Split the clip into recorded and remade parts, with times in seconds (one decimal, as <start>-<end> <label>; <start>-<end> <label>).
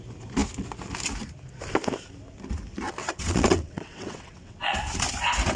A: 0.0-3.0 recorded; 3.0-4.8 remade; 4.8-5.6 recorded